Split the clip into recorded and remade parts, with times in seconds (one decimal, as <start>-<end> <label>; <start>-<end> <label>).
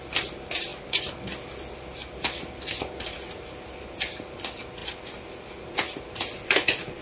0.0-7.0 recorded